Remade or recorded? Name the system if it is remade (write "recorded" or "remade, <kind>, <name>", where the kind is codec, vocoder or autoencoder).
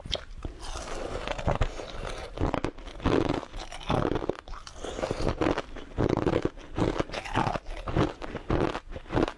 recorded